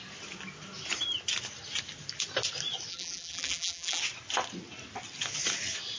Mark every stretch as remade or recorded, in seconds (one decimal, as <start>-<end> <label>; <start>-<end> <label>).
0.0-2.9 recorded; 2.9-4.0 remade; 4.0-6.0 recorded